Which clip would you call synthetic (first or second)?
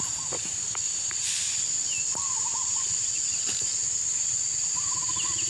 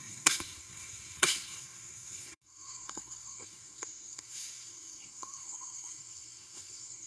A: second